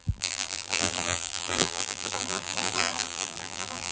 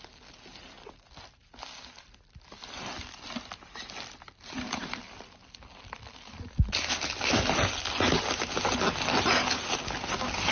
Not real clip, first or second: first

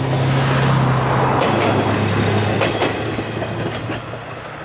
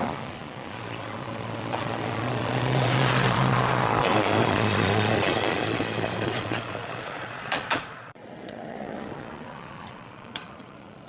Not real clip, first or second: second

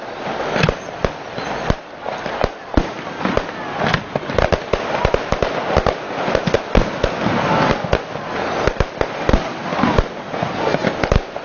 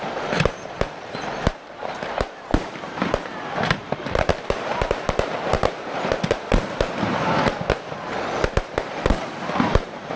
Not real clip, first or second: second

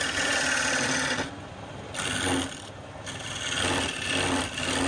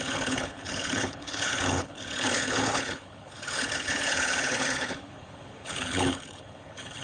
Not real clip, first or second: second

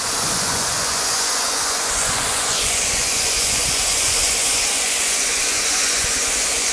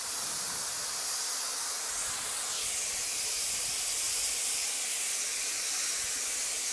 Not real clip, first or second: first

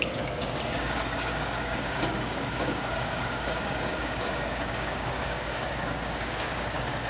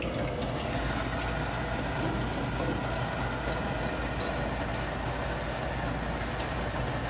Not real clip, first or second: first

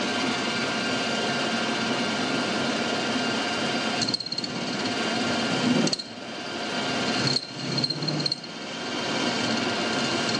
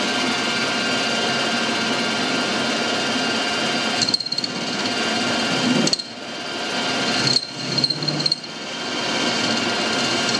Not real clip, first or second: first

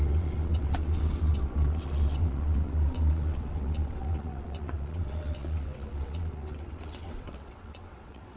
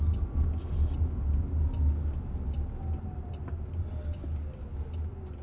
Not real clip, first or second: first